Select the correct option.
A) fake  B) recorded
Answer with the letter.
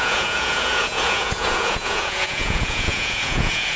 A